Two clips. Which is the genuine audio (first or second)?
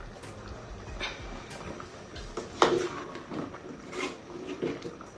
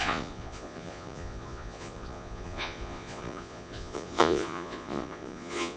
first